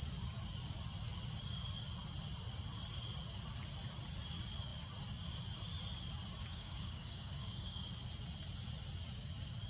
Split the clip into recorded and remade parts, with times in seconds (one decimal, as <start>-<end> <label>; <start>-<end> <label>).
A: 0.0-6.5 recorded; 6.5-7.8 remade; 7.8-9.7 recorded